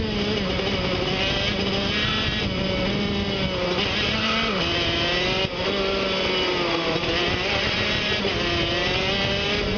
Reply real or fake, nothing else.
real